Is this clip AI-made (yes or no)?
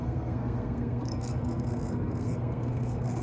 yes